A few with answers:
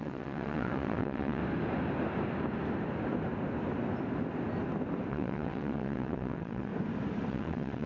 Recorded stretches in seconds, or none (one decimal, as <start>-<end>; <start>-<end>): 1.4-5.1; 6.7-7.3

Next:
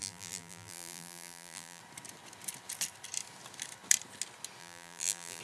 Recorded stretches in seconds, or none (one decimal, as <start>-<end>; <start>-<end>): 1.8-4.6

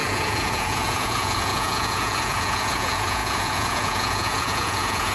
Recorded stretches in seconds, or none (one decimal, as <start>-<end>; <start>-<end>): none